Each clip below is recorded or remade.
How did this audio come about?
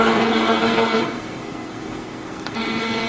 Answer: remade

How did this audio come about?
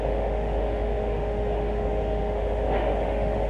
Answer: remade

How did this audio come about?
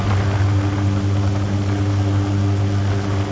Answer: recorded